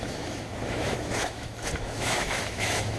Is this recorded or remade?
remade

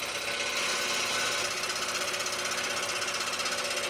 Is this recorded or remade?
recorded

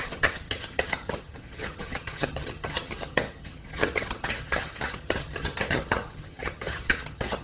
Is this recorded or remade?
remade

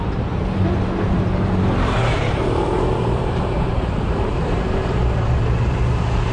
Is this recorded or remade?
remade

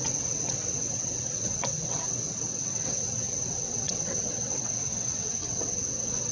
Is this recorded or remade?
remade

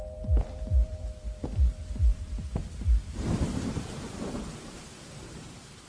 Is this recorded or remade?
remade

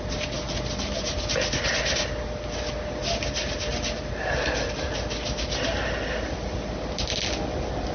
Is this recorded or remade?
recorded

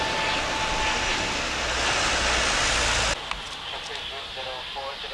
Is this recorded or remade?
recorded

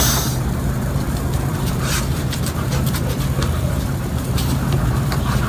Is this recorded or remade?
remade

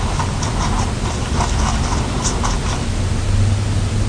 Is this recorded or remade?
recorded